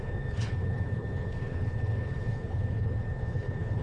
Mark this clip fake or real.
fake